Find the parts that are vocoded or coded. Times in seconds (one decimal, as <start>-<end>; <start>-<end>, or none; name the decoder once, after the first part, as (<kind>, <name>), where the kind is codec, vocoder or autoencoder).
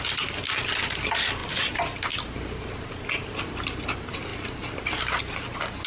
none